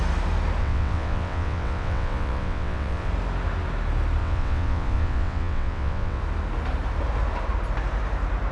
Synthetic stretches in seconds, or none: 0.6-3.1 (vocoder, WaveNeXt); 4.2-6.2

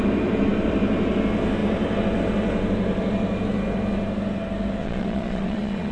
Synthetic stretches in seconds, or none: 4.8-5.9 (vocoder, Vocos)

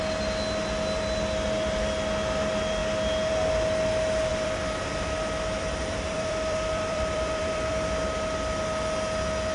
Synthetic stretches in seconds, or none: 4.3-7.9 (vocoder, BigVGAN v2)

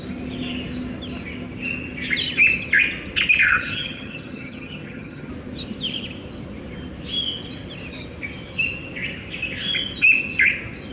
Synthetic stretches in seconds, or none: 3.4-5.3 (vocoder, HiFi-GAN)